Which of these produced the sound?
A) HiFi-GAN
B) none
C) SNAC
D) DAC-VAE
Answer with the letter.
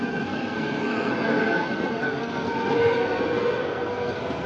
C